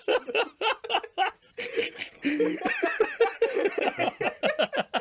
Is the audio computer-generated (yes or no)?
no